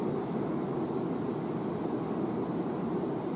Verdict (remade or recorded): recorded